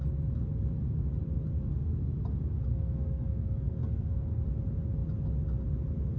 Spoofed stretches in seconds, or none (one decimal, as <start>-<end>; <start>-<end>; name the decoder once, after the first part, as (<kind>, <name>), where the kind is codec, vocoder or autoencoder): 2.7-4.4 (codec, SNAC)